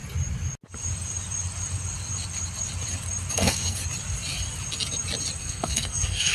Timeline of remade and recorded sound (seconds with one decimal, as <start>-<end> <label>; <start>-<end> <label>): 0.0-3.3 recorded; 3.3-3.8 remade; 3.8-5.4 recorded; 5.4-6.3 remade